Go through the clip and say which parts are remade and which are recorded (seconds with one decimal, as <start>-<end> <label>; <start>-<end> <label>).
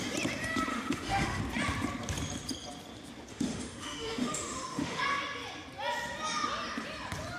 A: 0.0-0.7 recorded; 0.7-1.4 remade; 1.4-3.3 recorded; 3.3-5.0 remade; 5.0-7.4 recorded